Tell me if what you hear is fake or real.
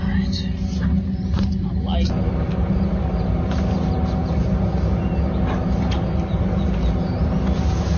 real